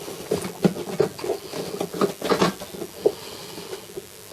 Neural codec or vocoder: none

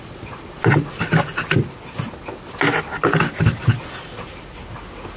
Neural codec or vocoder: none